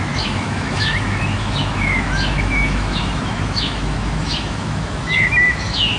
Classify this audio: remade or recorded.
remade